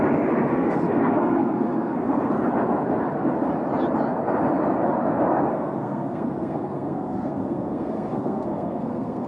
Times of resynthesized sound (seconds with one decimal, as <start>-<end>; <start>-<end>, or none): 0.5-2.3; 5.5-9.3